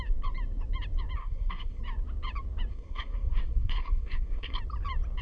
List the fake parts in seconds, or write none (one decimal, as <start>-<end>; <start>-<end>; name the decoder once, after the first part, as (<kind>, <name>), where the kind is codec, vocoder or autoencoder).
1.2-1.8 (codec, SNAC); 2.7-4.6